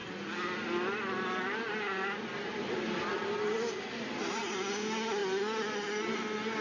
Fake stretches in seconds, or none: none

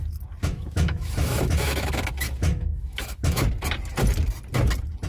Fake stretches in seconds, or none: 0.4-3.5 (autoencoder, DAC-VAE)

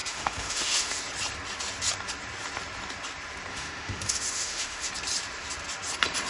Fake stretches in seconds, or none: 0.0-1.0 (autoencoder, DAC-VAE); 3.5-4.9

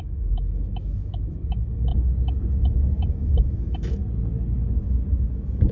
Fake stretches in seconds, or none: 0.0-1.9 (autoencoder, DAC-VAE); 3.1-4.0; 5.3-5.7

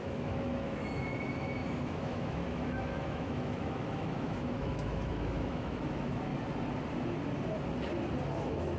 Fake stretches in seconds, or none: 0.0-6.3 (autoencoder, DAC-VAE); 8.4-8.8

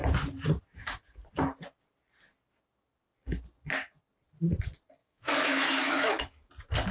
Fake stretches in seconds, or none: 5.0-6.5 (autoencoder, DAC-VAE)

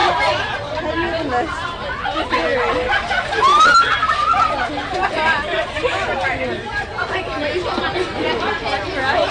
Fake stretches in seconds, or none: none

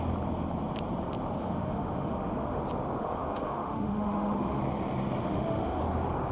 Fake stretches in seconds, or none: 1.4-2.6 (autoencoder, DAC-VAE); 3.0-4.6; 5.2-5.8